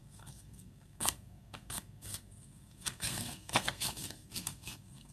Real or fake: fake